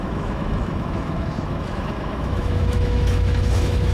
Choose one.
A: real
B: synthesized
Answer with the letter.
B